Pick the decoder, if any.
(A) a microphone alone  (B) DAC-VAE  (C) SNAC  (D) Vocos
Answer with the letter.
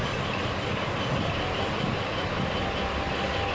A